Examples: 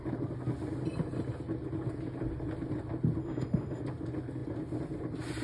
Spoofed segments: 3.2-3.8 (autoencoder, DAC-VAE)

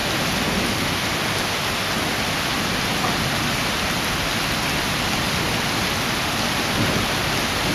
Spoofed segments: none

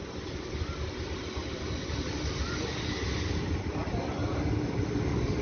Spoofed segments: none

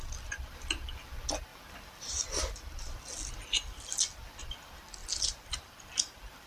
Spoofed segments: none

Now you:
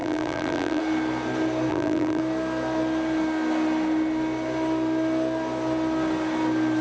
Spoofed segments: 0.0-0.8 (vocoder, BigVGAN v2); 1.7-2.2

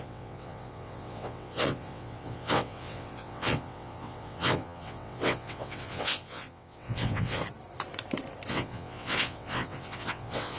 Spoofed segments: 0.0-7.4 (vocoder, WaveNeXt); 8.5-10.6

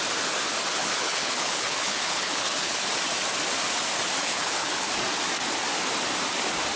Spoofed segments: 0.8-2.9 (codec, HILCodec); 4.2-4.9

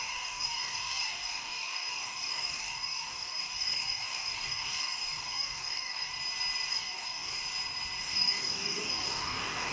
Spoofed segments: 0.0-6.1 (codec, DAC); 6.7-7.4; 8.0-9.7